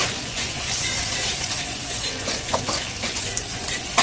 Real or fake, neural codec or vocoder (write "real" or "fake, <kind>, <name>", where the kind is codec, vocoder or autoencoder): fake, vocoder, Vocos